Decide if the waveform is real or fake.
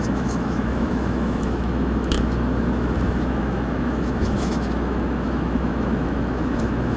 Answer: fake